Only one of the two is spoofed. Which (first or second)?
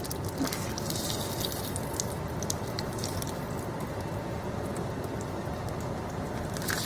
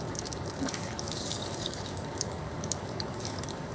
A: second